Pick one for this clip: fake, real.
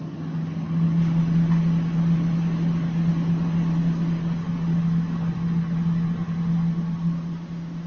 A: real